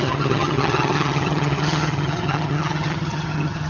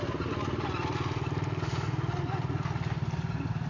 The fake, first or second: first